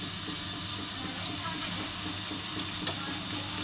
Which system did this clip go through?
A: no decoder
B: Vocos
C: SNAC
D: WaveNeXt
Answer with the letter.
A